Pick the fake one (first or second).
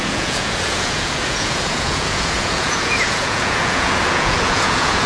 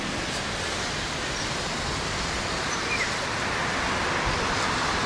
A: first